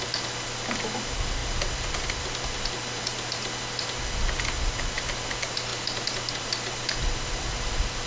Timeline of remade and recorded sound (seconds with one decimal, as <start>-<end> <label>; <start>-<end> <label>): 0.0-8.1 recorded